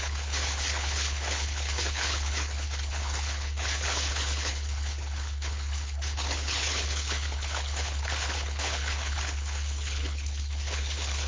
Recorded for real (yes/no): no